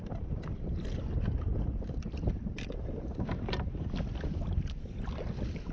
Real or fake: fake